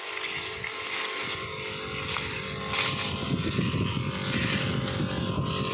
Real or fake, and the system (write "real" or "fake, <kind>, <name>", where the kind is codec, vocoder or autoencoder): real